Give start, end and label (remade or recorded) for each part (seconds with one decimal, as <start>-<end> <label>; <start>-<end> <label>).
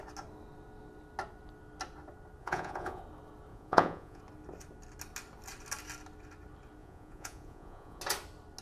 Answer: 0.0-2.4 recorded; 2.4-3.0 remade; 3.0-3.5 recorded; 3.5-4.2 remade; 4.2-6.8 recorded; 6.8-8.0 remade; 8.0-8.6 recorded